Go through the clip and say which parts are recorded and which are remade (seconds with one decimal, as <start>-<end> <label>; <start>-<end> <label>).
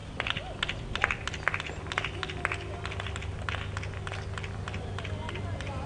0.0-5.9 recorded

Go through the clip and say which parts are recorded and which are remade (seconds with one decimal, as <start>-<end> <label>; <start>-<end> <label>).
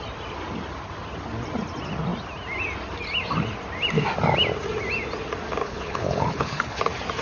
0.0-5.6 recorded; 5.6-6.8 remade; 6.8-7.2 recorded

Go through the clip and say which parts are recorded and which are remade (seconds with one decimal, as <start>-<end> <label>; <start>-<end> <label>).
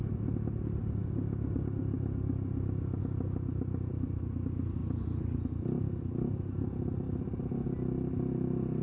0.0-8.8 recorded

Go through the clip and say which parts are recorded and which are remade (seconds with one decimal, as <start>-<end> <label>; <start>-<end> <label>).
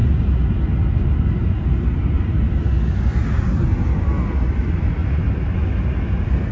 0.0-6.5 recorded